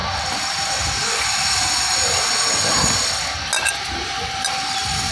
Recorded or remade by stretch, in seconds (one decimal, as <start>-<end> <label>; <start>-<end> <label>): 0.0-5.1 recorded